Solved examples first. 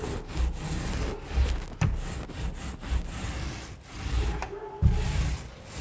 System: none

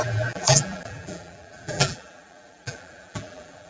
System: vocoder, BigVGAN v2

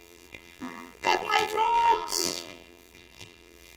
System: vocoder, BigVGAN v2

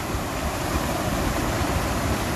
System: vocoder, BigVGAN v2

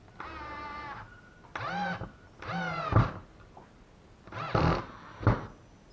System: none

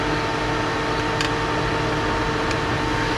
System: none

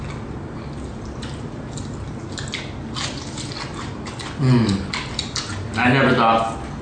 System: none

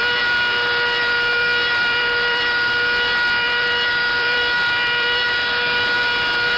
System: vocoder, BigVGAN v2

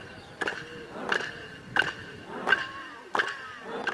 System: none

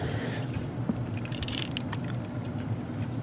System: vocoder, BigVGAN v2